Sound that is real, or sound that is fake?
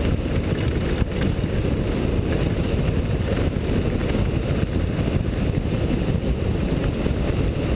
real